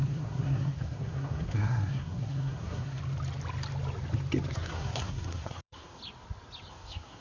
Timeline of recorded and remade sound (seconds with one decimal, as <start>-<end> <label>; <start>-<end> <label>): 0.0-3.0 remade; 3.0-4.5 recorded; 4.5-6.0 remade; 6.0-6.7 recorded; 6.7-7.2 remade